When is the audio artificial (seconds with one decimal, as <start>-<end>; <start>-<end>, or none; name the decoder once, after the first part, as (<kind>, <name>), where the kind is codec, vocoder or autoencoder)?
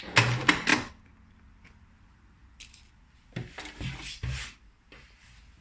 none